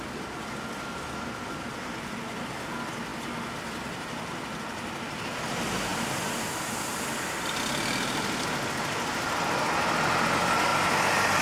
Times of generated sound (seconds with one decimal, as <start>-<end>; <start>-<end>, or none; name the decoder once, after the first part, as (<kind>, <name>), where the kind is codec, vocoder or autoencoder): none